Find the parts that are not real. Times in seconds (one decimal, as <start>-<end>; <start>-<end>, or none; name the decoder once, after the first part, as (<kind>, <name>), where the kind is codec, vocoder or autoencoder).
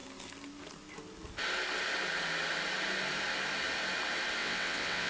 4.4-5.1 (vocoder, WaveNeXt)